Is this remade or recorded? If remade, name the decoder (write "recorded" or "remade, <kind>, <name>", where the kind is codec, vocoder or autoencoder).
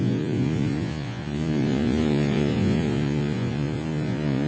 remade, vocoder, Vocos